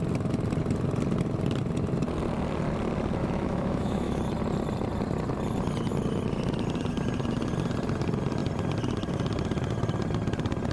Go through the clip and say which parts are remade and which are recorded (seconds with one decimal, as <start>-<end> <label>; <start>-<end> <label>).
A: 0.0-3.2 recorded; 3.2-4.2 remade; 4.2-10.7 recorded